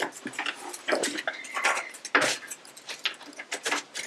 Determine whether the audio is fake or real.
real